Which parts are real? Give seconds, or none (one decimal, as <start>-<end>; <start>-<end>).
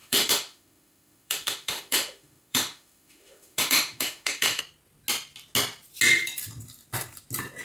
4.6-7.6